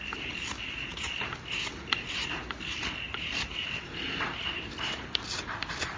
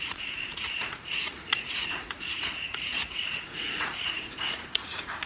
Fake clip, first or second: second